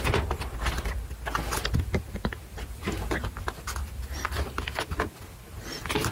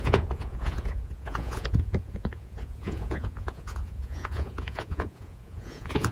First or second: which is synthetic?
second